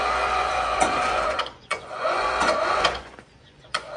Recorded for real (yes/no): no